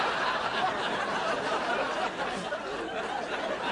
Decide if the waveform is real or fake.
real